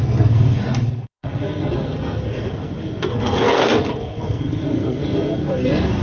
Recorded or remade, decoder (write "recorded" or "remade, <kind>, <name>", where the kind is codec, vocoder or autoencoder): remade, codec, SNAC